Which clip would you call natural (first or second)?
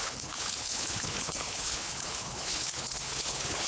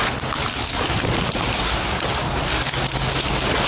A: second